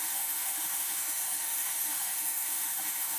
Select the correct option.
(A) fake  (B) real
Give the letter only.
A